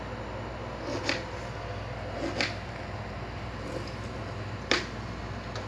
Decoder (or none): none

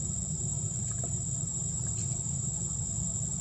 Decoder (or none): none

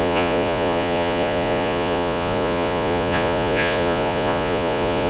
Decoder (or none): vocoder, Vocos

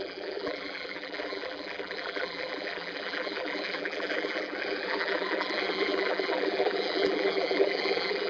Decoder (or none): vocoder, BigVGAN v2